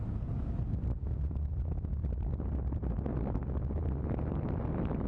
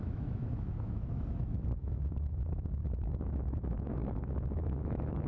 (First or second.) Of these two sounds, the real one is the first